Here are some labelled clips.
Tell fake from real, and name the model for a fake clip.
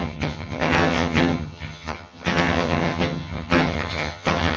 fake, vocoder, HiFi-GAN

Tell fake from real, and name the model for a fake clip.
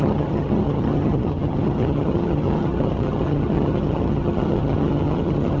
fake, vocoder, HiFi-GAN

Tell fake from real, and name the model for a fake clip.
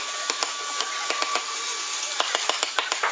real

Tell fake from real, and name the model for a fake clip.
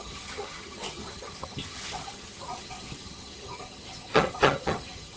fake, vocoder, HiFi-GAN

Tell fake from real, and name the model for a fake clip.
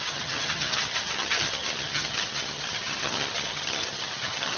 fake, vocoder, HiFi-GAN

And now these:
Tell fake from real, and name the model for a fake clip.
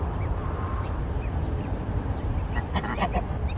real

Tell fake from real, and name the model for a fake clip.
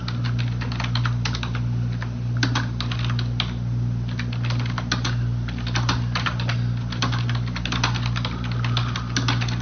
real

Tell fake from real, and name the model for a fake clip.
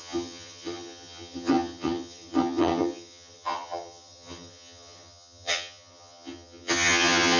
fake, vocoder, HiFi-GAN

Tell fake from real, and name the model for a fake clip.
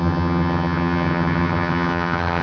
fake, vocoder, HiFi-GAN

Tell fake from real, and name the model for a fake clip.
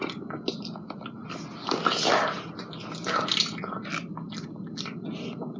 real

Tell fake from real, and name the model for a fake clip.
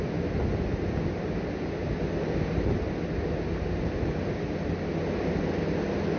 real